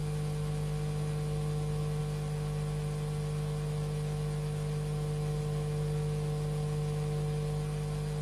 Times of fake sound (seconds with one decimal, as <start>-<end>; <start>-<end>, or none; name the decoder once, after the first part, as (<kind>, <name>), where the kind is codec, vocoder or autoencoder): none